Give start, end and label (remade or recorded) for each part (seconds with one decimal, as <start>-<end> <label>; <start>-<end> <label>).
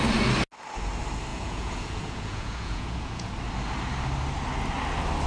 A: 0.0-1.3 recorded; 1.3-3.3 remade; 3.3-5.3 recorded